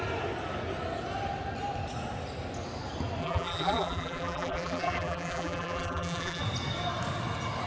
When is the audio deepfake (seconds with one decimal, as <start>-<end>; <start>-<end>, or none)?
3.2-6.4